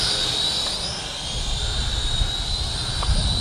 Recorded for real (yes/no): yes